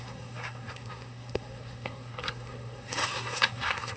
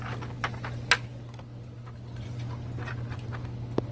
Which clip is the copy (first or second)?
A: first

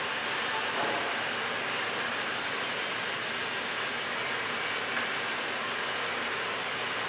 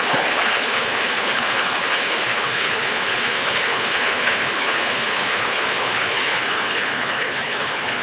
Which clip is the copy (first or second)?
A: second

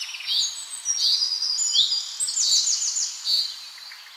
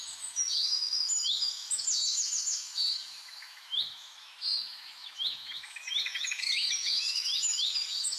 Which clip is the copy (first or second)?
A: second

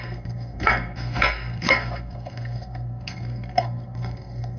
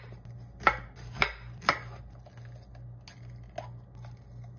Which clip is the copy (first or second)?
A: first